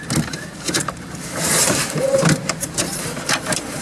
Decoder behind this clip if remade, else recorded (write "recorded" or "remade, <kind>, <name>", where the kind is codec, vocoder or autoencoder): remade, vocoder, BigVGAN v2